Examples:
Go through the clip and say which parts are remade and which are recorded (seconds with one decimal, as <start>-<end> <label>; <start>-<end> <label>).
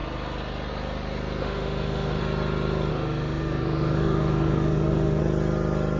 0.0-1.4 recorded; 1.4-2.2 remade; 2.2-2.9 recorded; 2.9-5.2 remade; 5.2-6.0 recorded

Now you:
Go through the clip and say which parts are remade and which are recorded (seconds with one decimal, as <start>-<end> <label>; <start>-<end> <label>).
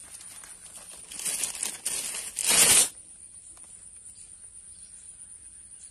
0.0-5.9 recorded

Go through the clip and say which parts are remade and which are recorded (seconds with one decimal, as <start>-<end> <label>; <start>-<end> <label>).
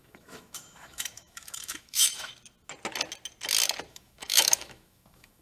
0.0-2.3 remade; 2.3-3.9 recorded; 3.9-5.4 remade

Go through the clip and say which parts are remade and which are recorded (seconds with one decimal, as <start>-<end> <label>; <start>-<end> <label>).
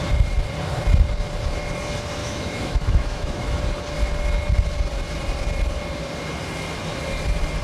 0.0-2.2 recorded; 2.2-3.6 remade; 3.6-7.6 recorded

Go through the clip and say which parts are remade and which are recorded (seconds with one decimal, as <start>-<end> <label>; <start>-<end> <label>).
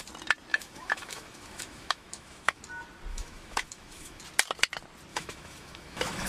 0.0-0.5 recorded; 0.5-2.6 remade; 2.6-3.1 recorded; 3.1-4.2 remade; 4.2-5.1 recorded; 5.1-6.3 remade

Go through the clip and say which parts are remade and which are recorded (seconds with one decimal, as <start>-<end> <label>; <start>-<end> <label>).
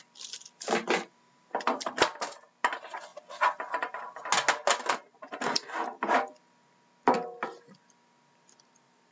0.0-9.1 recorded